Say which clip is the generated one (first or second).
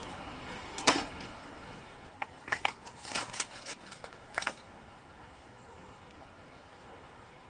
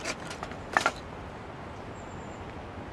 first